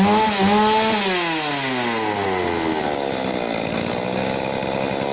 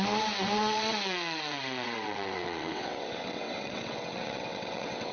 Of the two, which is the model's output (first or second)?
second